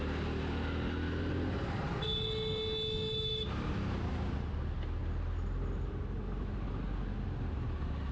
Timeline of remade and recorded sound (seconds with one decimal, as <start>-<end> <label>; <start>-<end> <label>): 0.0-8.1 recorded